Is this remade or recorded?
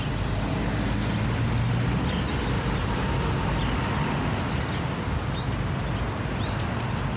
recorded